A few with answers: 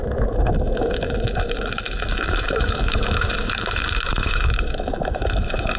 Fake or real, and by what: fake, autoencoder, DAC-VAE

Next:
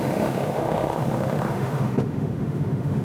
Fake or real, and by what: fake, autoencoder, DAC-VAE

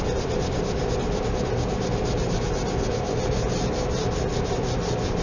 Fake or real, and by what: real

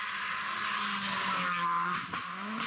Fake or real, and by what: real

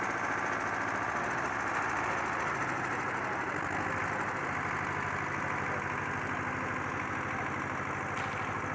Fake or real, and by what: real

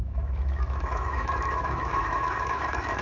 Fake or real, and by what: fake, autoencoder, DAC-VAE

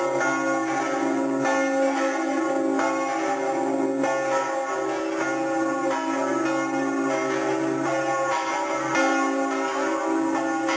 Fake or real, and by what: real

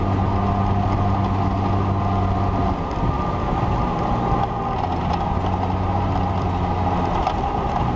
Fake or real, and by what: real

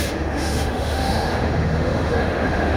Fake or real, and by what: fake, autoencoder, DAC-VAE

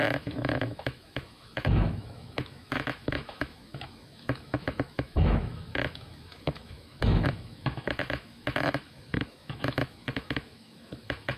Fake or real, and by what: fake, autoencoder, DAC-VAE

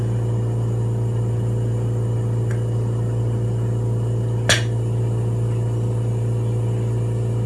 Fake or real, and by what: real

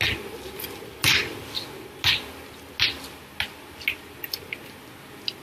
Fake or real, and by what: real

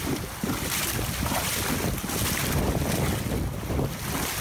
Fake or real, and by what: real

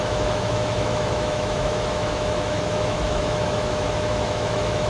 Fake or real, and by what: fake, autoencoder, DAC-VAE